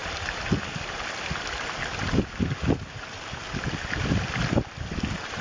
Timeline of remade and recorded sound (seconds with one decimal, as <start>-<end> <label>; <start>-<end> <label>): 0.0-5.4 recorded